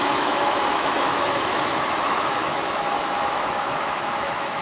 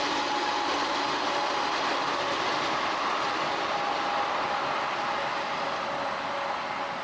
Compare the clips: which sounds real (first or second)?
second